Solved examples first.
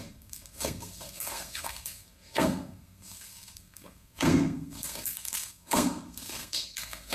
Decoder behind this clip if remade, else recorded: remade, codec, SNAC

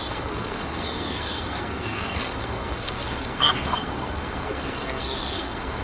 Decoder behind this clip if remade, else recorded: remade, codec, SNAC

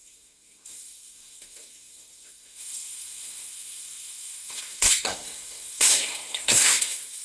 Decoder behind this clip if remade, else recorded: remade, codec, SNAC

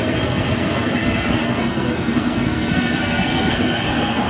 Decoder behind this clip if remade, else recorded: remade, codec, SNAC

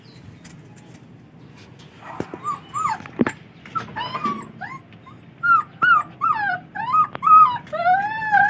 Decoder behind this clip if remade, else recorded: recorded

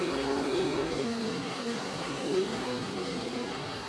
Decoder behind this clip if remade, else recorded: remade, codec, SNAC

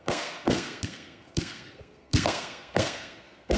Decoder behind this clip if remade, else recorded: remade, codec, SNAC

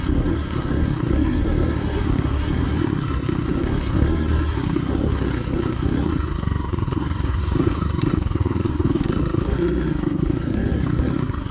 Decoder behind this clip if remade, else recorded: remade, codec, SNAC